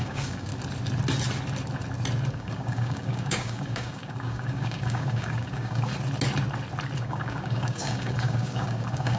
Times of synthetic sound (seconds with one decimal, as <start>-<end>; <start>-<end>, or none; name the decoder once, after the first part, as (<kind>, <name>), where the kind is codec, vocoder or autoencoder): 0.0-0.5 (codec, DAC); 2.3-5.9; 7.0-9.2